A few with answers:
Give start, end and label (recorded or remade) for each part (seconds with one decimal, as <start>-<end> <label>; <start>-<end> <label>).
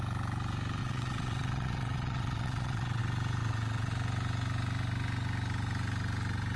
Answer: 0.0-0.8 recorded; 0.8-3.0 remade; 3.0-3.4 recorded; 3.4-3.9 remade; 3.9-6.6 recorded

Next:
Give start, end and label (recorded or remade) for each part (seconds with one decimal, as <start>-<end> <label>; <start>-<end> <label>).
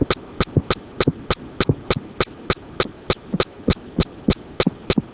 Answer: 0.0-5.1 recorded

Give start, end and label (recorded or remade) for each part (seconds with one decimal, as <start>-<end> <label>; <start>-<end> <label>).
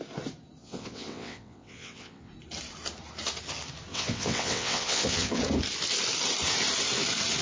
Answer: 0.0-0.6 recorded; 0.6-2.3 remade; 2.3-3.9 recorded; 3.9-5.4 remade; 5.4-7.4 recorded